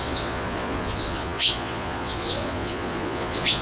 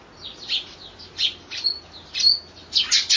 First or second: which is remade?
first